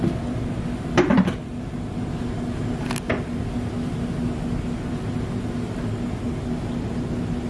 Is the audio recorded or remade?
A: recorded